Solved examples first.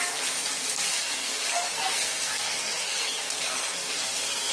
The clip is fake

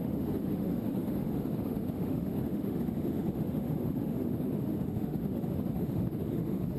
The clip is fake